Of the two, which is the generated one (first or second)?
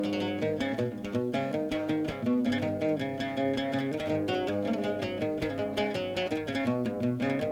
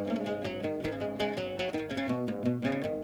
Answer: second